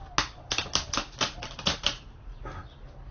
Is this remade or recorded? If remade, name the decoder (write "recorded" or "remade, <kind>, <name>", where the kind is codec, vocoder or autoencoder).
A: recorded